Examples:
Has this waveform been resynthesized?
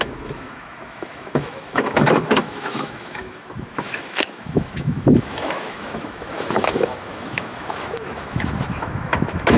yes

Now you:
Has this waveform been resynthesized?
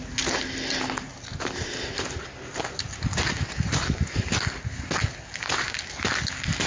no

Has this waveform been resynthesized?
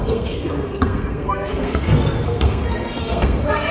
yes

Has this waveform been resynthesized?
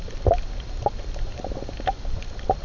no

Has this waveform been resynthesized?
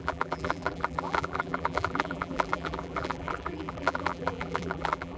yes